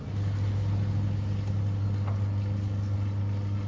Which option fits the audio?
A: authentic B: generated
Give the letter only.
A